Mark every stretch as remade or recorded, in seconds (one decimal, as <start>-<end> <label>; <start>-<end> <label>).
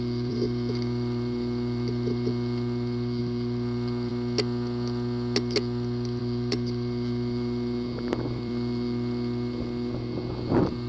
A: 0.0-4.1 remade; 4.1-6.2 recorded; 6.2-10.9 remade